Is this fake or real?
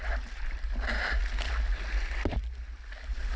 real